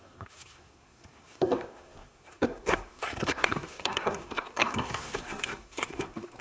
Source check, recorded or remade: remade